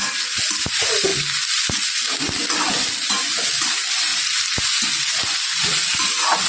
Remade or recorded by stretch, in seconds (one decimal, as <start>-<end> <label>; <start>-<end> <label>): 0.0-6.5 recorded